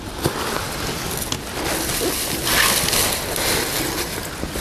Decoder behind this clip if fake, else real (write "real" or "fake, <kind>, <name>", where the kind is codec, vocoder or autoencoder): real